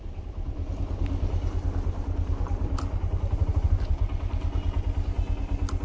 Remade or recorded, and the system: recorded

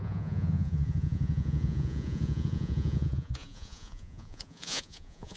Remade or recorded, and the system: remade, vocoder, Vocos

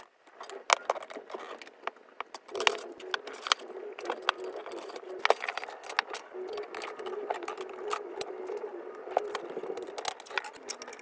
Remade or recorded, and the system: recorded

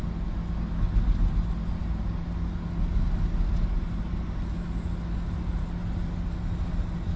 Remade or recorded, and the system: recorded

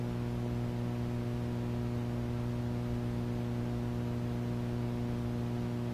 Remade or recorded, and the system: recorded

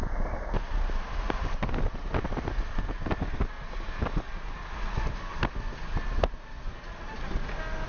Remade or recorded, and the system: recorded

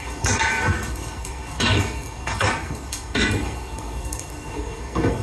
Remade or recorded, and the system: remade, codec, SNAC